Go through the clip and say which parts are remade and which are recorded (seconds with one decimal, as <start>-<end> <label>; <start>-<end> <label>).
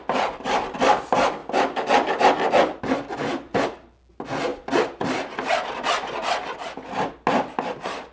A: 0.0-8.1 recorded